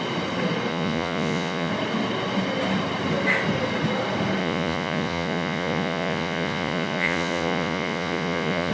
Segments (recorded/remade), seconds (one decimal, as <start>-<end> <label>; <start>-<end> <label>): 0.0-0.7 recorded; 0.7-1.7 remade; 1.7-4.4 recorded; 4.4-8.7 remade